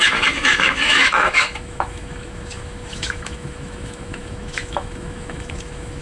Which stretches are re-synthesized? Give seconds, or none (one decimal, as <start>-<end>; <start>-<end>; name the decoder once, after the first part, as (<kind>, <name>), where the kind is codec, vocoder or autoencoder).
0.0-6.0 (autoencoder, DAC-VAE)